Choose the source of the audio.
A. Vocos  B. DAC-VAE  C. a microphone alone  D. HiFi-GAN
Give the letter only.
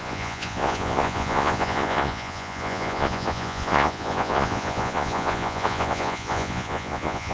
A